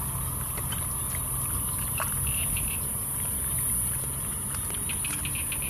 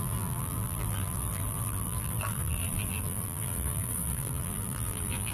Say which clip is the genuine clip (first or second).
first